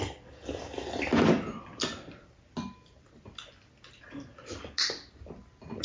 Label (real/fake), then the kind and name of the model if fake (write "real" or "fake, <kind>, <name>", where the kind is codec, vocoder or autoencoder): real